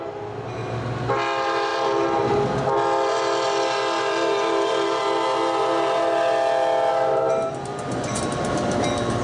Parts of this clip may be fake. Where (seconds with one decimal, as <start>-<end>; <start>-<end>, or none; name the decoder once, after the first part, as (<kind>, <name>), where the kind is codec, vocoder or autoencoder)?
7.7-8.2 (vocoder, Vocos)